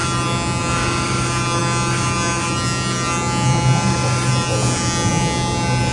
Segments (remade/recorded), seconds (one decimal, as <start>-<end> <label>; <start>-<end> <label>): 0.0-5.9 recorded